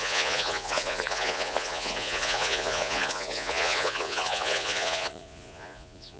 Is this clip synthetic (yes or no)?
yes